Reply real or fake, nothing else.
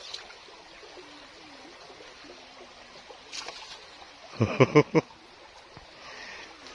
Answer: real